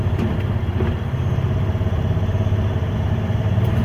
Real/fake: real